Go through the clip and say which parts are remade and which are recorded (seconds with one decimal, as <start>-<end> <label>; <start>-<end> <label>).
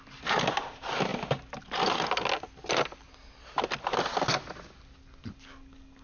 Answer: 0.0-6.0 recorded